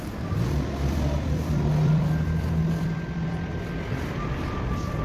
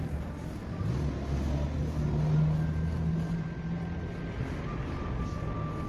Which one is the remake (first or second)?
first